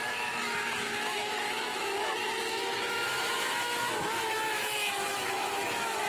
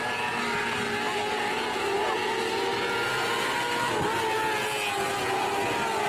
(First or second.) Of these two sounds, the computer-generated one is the first